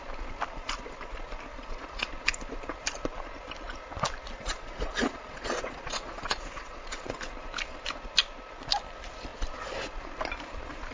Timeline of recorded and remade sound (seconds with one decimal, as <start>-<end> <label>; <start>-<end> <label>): 0.0-1.5 recorded; 1.5-2.1 remade; 2.1-4.4 recorded; 4.4-7.2 remade; 7.2-10.9 recorded